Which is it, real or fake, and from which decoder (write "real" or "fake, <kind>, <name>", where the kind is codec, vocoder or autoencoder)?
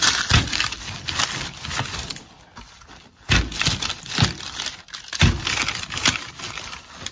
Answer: real